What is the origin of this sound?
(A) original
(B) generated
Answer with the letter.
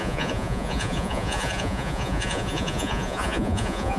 B